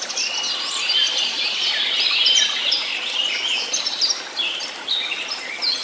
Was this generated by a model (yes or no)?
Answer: no